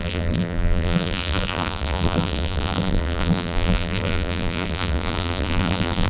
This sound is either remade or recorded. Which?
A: remade